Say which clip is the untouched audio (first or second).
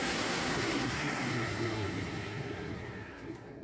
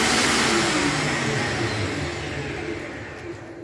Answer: second